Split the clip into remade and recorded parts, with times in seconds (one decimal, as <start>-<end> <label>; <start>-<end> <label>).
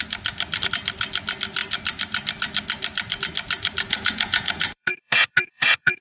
0.0-3.9 recorded; 3.9-6.0 remade